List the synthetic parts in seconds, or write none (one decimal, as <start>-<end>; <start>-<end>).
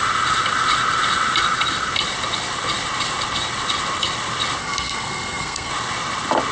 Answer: 4.6-5.7